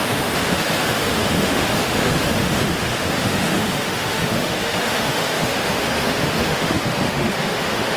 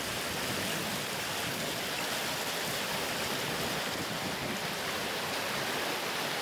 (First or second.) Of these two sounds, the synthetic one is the first